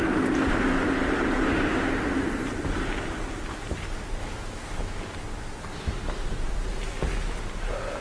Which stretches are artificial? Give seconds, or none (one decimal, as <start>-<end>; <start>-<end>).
4.2-4.8